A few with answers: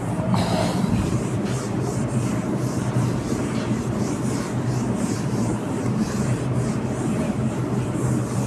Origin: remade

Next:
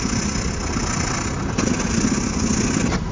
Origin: recorded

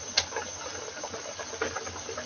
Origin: recorded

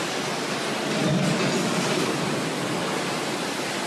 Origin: recorded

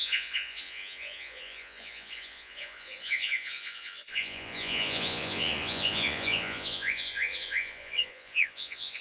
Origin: remade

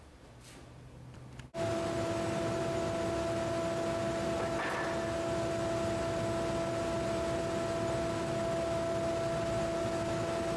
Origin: recorded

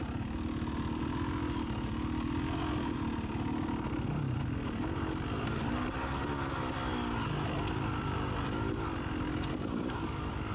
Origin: recorded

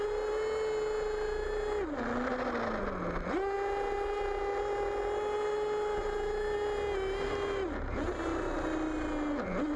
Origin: recorded